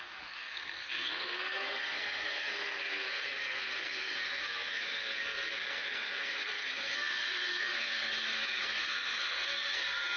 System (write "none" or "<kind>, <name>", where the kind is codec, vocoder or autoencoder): codec, SNAC